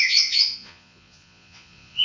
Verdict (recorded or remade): remade